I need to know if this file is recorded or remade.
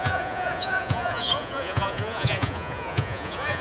remade